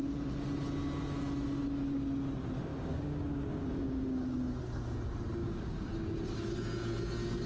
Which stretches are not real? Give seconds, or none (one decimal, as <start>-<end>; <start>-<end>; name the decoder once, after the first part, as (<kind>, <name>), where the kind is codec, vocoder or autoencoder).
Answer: 2.7-4.6 (codec, DAC); 5.4-5.9